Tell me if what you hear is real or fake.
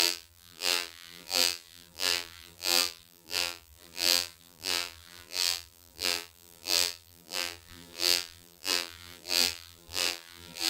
fake